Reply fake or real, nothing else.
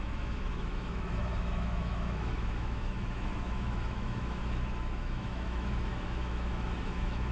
fake